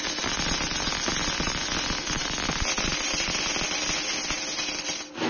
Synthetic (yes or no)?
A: no